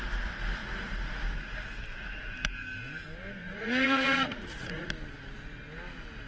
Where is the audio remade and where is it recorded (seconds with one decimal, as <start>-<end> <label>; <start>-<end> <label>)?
0.0-3.4 recorded; 3.4-4.9 remade; 4.9-6.3 recorded